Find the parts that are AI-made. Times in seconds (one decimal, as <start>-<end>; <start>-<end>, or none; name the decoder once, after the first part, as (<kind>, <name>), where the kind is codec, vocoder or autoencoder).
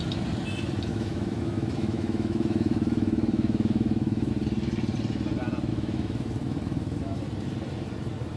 0.9-4.3 (autoencoder, DAC-VAE); 5.7-7.2